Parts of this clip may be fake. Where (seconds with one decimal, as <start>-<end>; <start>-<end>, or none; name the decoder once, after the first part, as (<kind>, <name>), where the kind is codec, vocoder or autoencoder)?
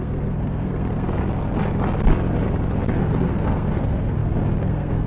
0.0-1.2 (codec, SNAC); 3.0-5.1